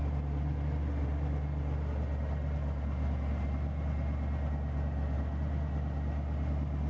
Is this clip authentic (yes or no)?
yes